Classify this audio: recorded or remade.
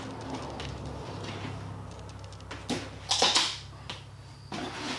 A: recorded